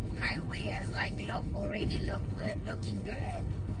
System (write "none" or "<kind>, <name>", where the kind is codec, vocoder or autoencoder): codec, HILCodec